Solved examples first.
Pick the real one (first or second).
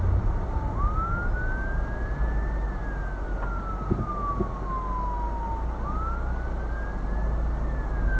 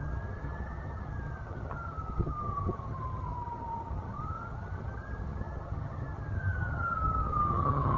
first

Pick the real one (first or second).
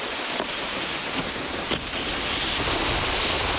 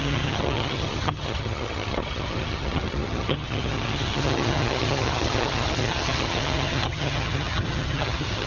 first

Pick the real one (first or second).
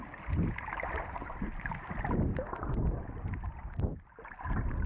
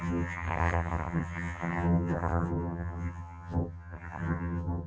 first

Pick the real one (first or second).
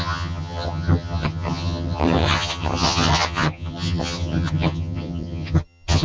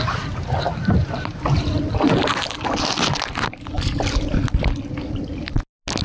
second